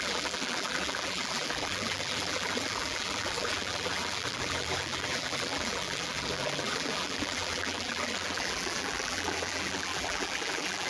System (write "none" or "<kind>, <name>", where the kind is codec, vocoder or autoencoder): vocoder, BigVGAN v2